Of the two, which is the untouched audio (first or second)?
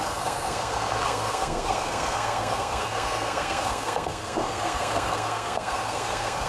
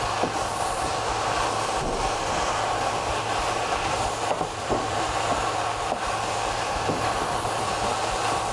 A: second